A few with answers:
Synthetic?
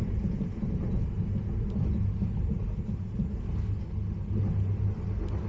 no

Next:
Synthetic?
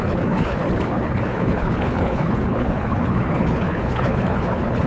yes